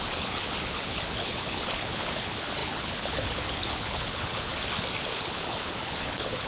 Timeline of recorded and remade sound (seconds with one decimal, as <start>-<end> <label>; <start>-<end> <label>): 0.0-4.5 remade; 4.5-5.0 recorded; 5.0-6.5 remade